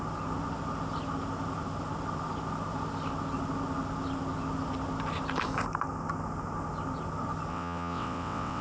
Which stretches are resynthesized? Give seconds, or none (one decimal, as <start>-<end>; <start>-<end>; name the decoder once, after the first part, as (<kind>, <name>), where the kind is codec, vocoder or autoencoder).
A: 7.5-8.6 (vocoder, WaveNeXt)